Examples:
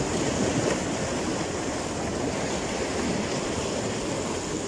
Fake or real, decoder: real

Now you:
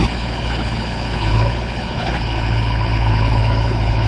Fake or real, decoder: fake, codec, HILCodec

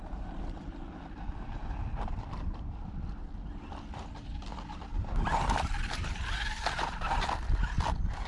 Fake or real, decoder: real